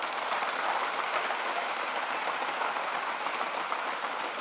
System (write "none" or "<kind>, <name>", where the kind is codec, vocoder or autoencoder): none